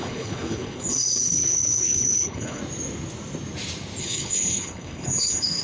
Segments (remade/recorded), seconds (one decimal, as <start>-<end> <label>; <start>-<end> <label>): 0.0-2.6 remade; 2.6-4.0 recorded; 4.0-5.6 remade